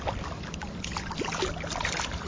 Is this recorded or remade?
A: recorded